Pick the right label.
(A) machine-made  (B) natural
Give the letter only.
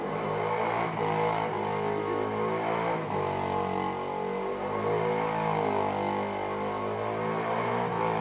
B